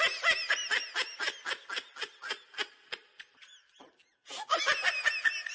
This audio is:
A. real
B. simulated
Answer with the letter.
A